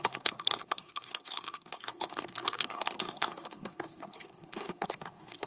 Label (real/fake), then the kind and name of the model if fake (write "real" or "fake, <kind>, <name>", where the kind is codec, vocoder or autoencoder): fake, codec, SNAC